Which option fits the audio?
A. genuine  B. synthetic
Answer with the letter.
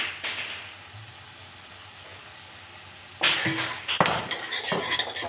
A